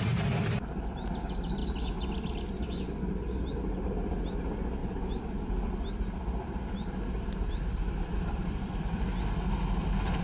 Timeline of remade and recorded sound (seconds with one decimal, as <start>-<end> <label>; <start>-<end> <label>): 0.0-4.8 recorded; 4.8-5.7 remade; 5.7-7.7 recorded; 7.7-9.1 remade; 9.1-10.2 recorded